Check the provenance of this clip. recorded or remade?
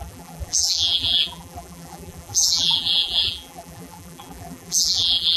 remade